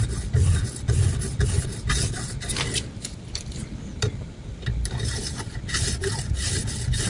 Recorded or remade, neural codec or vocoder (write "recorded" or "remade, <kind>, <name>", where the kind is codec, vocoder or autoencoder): recorded